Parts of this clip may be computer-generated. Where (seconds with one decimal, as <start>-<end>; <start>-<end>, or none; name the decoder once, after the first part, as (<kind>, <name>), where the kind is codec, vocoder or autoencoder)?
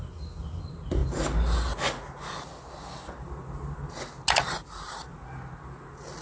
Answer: none